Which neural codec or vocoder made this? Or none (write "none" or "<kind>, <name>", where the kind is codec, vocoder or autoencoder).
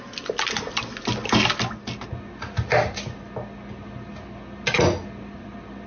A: none